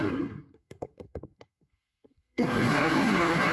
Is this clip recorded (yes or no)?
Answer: no